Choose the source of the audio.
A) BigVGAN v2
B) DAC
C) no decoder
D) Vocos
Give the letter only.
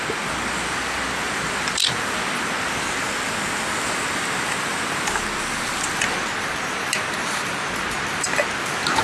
C